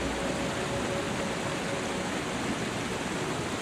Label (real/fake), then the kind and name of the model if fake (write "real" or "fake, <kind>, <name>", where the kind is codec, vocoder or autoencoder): real